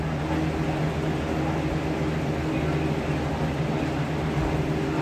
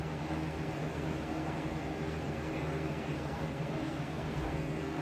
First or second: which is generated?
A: second